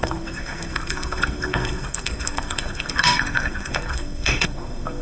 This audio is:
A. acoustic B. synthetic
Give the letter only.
B